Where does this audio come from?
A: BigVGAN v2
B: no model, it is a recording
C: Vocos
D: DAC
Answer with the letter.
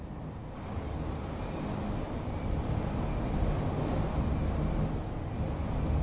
B